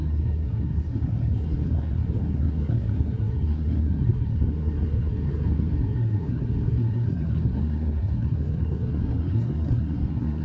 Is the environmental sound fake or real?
fake